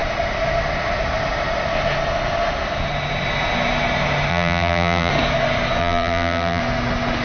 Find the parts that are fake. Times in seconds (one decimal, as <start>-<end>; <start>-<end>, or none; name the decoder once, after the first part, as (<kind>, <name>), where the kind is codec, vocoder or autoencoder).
4.3-5.1 (vocoder, BigVGAN v2); 5.8-6.6